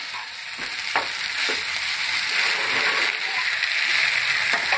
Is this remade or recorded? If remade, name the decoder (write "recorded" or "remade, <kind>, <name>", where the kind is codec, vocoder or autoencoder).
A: recorded